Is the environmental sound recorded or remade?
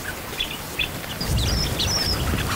recorded